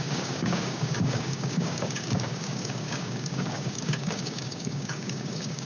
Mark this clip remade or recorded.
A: remade